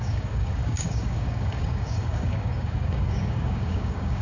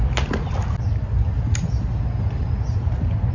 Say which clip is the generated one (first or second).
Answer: first